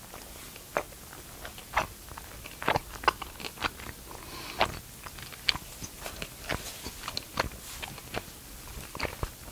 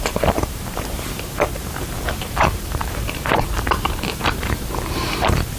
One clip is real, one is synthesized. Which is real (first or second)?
first